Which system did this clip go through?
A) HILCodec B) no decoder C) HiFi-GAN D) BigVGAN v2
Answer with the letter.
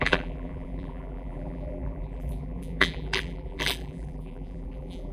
D